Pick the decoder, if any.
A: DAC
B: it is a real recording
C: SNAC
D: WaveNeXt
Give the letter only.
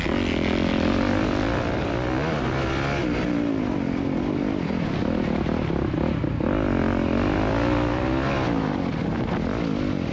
B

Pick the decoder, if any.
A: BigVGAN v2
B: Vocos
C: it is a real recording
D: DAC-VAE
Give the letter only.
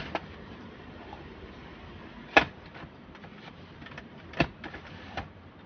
A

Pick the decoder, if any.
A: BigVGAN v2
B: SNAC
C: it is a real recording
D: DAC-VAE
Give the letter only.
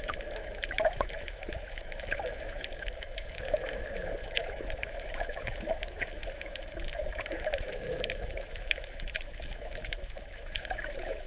D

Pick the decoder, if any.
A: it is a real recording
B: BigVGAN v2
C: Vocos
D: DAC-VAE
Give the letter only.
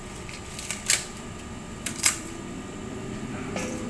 B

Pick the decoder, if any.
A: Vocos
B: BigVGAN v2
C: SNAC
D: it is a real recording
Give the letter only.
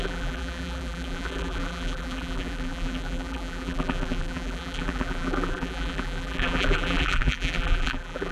B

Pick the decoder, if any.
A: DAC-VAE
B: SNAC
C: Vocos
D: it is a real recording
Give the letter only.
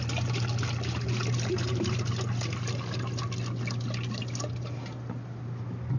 D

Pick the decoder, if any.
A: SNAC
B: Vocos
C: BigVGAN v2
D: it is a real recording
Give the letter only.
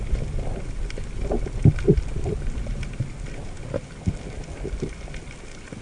D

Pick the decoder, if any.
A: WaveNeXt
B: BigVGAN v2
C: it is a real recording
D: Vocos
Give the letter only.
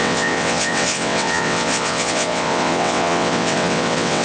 A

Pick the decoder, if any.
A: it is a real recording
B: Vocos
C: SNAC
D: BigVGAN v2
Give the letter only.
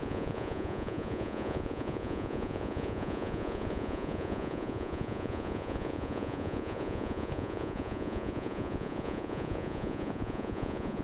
B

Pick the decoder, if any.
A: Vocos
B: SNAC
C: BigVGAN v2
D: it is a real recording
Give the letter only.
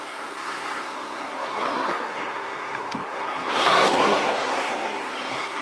B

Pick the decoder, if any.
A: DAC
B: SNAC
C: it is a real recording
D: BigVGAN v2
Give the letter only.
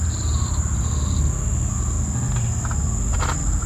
C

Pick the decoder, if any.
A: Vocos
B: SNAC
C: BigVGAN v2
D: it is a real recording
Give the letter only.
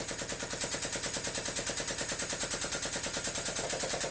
D